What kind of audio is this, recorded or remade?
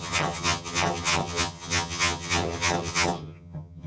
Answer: remade